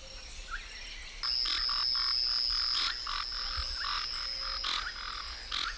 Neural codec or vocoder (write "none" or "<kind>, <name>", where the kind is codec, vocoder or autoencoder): none